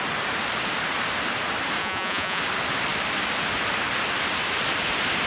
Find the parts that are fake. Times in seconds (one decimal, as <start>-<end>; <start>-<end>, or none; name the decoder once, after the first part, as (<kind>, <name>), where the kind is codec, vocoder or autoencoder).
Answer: 1.8-2.4 (vocoder, Vocos)